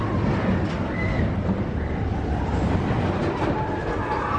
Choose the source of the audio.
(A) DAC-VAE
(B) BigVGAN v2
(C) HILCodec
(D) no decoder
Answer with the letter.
D